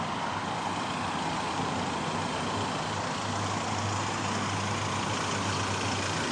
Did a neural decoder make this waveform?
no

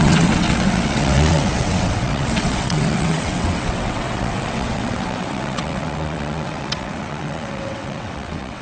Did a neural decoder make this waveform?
yes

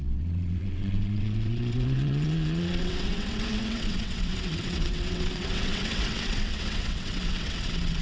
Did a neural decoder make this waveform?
yes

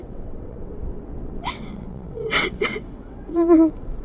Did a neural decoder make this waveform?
yes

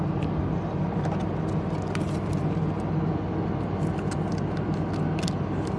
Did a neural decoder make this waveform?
no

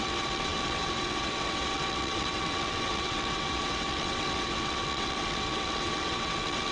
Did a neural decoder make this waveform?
yes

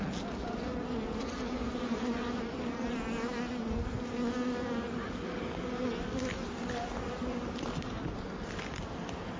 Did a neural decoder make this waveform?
no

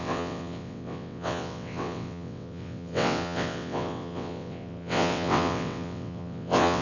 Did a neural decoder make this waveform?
yes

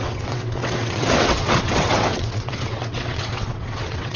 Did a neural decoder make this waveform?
yes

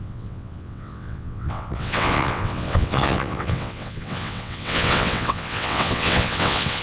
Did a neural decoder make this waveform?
yes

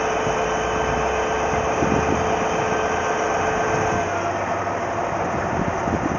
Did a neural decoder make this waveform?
no